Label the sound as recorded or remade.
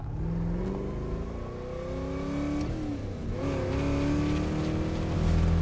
recorded